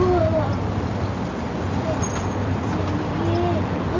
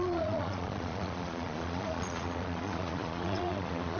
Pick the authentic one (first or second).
first